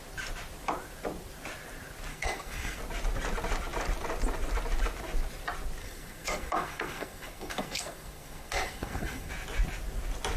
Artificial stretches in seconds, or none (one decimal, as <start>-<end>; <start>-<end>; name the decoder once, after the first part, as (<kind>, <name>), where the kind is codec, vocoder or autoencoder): 2.1-2.8 (codec, SNAC); 5.8-9.3